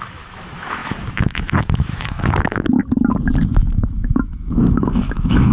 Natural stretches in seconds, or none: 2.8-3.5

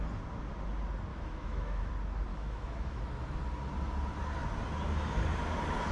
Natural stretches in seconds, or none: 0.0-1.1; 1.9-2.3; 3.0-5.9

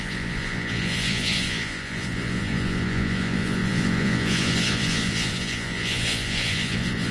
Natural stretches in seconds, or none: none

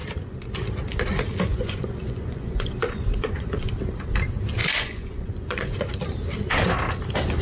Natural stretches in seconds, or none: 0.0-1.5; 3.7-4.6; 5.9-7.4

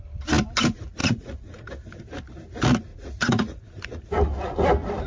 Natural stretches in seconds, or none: 0.0-1.0; 1.7-2.9; 4.0-5.1

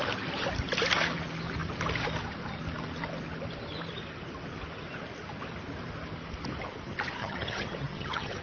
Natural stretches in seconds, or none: 0.0-7.2

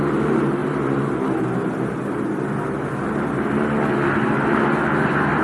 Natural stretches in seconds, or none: 0.0-5.4